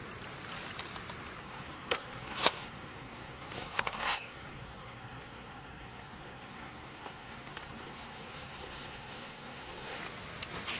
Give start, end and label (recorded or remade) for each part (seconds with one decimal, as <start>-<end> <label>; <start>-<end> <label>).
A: 0.0-1.4 recorded; 1.4-10.0 remade; 10.0-10.8 recorded